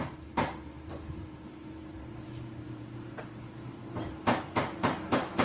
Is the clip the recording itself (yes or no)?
no